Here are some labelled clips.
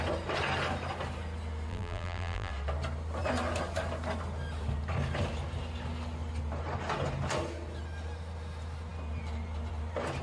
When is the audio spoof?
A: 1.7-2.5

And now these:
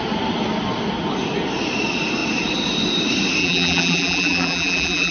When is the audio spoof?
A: 3.4-5.1